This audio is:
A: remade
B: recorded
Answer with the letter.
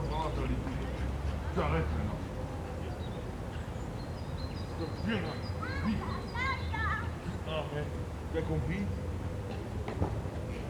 B